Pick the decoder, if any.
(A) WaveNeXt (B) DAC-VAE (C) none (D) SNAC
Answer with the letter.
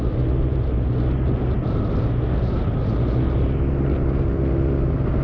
C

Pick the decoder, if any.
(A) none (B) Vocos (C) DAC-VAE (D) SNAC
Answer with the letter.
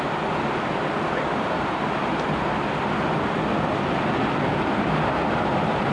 A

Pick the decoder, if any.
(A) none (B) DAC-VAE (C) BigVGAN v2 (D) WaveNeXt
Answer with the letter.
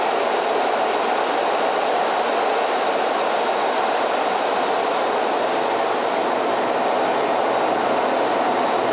A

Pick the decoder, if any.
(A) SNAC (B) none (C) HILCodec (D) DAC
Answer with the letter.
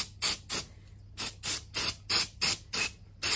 B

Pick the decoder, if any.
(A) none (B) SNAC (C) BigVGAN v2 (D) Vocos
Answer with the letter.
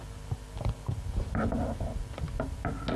A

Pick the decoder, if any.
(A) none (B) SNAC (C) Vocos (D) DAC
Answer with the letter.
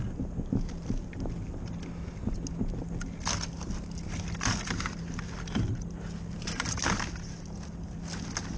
A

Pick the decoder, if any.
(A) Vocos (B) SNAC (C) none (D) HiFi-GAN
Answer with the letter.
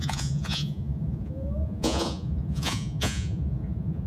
A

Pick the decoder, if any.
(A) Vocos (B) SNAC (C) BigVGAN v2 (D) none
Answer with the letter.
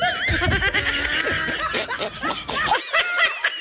D